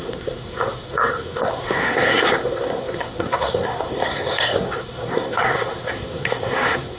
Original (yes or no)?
no